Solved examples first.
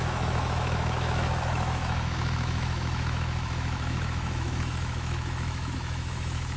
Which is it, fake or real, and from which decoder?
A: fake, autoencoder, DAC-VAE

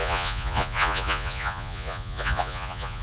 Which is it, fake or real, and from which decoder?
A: fake, vocoder, Vocos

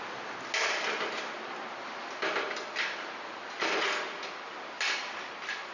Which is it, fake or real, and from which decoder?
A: real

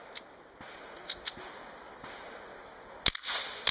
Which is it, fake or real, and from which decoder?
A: real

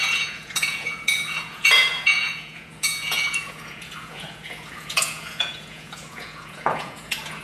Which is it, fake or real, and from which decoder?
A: fake, vocoder, Vocos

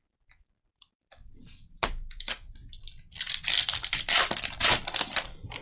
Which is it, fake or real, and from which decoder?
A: real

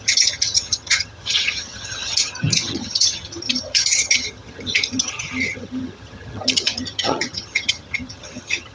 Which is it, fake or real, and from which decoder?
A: fake, vocoder, HiFi-GAN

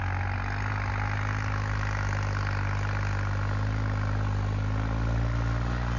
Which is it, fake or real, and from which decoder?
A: real